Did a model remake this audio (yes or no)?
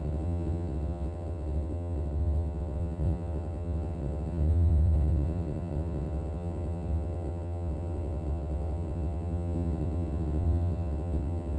yes